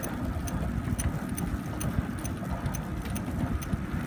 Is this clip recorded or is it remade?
recorded